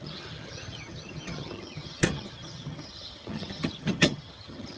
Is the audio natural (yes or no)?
no